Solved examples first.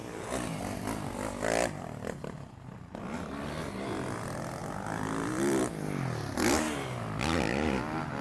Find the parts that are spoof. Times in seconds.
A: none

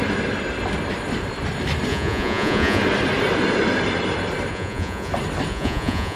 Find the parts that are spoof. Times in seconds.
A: 1.9-2.8 (vocoder, Vocos); 4.5-5.1; 5.5-6.2

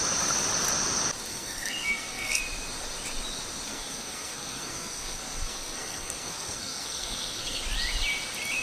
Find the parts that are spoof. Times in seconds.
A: 1.3-2.4 (codec, SNAC); 3.7-7.6

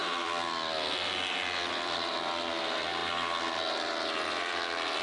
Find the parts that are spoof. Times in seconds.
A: 0.0-3.0 (vocoder, BigVGAN v2)

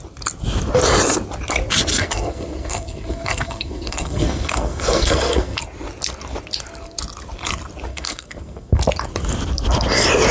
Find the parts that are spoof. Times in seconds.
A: 1.9-5.6 (codec, SNAC); 7.9-8.8